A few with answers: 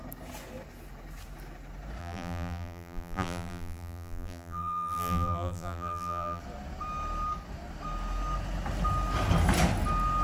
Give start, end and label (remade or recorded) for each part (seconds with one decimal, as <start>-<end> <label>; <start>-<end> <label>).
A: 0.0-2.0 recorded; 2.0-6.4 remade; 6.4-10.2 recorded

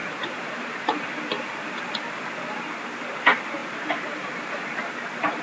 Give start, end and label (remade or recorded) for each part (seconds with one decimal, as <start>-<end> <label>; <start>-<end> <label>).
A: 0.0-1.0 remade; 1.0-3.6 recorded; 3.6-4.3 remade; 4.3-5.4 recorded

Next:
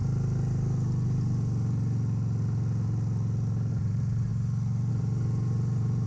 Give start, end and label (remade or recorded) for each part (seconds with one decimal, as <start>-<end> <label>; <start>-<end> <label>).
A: 0.0-3.7 recorded; 3.7-4.3 remade; 4.3-4.9 recorded; 4.9-6.1 remade

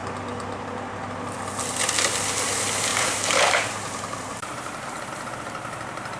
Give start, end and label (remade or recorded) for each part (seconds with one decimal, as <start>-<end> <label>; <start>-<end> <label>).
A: 0.0-2.9 recorded; 2.9-6.2 remade

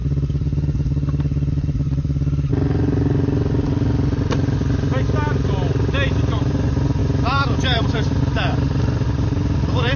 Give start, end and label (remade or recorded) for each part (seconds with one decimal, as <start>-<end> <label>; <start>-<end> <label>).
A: 0.0-1.5 recorded; 1.5-2.5 remade; 2.5-6.2 recorded; 6.2-10.0 remade